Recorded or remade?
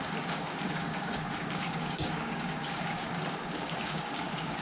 remade